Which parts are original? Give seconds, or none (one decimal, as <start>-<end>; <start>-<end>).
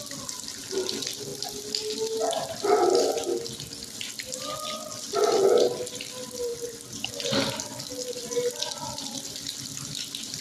0.0-10.4